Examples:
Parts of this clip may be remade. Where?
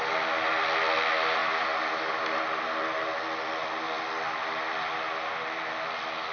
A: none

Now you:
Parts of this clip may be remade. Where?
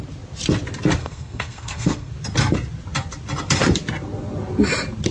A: 1.0-2.1 (codec, SNAC)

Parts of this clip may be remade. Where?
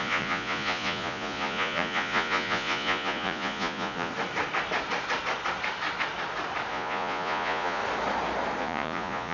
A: 0.0-4.1 (vocoder, Vocos); 6.7-7.8; 8.6-9.3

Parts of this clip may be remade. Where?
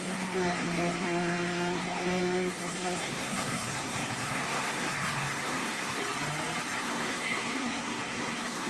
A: 0.0-6.0 (codec, SNAC); 6.8-8.7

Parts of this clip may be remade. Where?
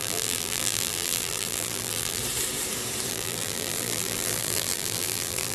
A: 0.0-2.2 (vocoder, BigVGAN v2); 3.1-5.5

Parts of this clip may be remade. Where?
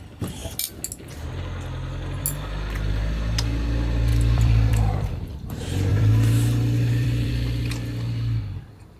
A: 4.1-5.5 (vocoder, BigVGAN v2); 5.9-7.3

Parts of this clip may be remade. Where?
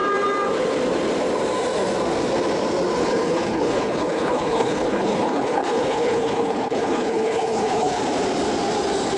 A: 3.0-8.0 (codec, HILCodec)